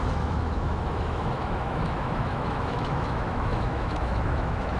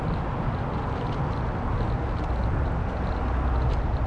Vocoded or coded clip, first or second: first